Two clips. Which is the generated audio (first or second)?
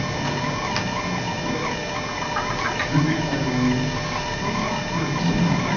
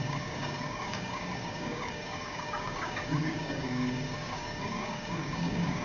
second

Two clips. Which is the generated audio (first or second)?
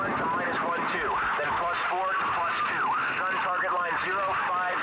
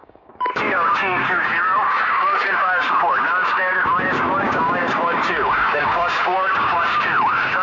second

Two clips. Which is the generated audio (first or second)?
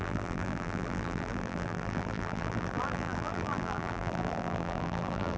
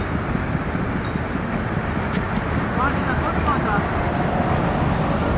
first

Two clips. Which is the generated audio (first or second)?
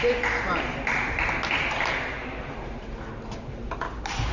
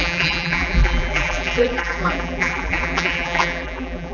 second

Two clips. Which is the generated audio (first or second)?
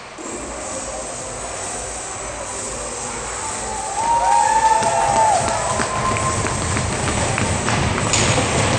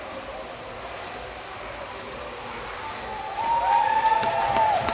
second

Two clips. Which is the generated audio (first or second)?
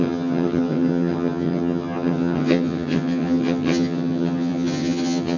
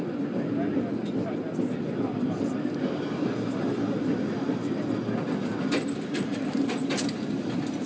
first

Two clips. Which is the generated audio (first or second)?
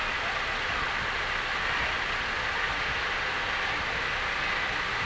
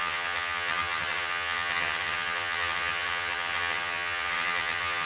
second